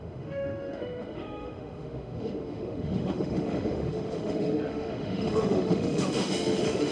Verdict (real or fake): fake